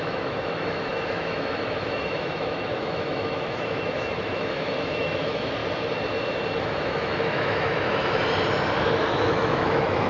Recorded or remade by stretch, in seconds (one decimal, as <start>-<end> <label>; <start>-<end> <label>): 0.0-5.6 remade; 5.6-6.6 recorded; 6.6-8.2 remade; 8.2-9.1 recorded; 9.1-10.1 remade